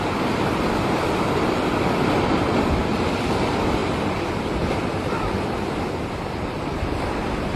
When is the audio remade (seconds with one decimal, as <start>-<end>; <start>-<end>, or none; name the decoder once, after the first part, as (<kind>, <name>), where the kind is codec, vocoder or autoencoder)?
none